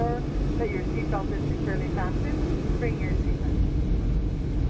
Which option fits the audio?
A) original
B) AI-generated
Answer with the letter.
A